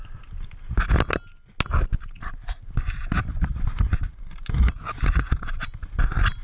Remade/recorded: recorded